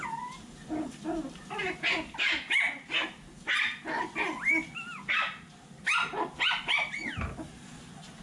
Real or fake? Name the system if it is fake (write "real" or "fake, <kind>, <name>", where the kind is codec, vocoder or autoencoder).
real